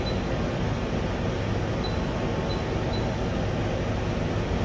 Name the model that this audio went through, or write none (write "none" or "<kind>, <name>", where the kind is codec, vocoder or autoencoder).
none